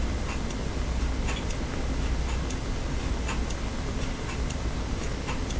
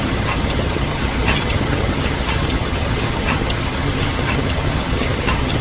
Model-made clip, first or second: second